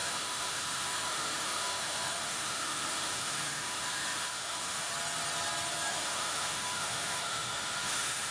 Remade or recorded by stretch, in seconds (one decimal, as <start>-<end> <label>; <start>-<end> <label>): 0.0-4.9 remade; 4.9-5.9 recorded; 5.9-8.3 remade